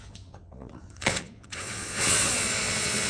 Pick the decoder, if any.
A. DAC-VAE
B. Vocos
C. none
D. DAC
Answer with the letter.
B